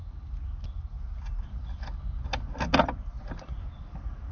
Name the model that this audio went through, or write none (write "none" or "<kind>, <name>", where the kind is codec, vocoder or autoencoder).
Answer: none